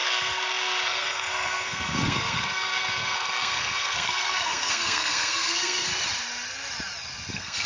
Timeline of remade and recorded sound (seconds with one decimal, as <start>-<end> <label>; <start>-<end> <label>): 0.0-5.9 remade; 5.9-7.3 recorded; 7.3-7.7 remade